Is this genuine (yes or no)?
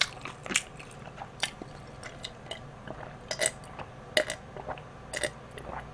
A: yes